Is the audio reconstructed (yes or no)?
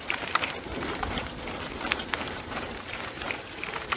yes